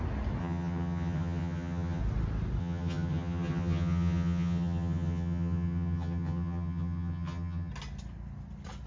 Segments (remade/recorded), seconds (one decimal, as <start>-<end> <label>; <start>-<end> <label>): 0.0-0.4 recorded; 0.4-2.0 remade; 2.0-2.6 recorded; 2.6-7.7 remade; 7.7-8.9 recorded